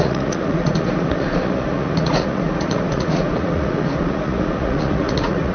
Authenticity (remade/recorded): remade